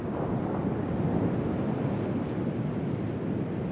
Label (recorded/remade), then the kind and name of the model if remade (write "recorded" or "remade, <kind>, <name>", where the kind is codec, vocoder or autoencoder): recorded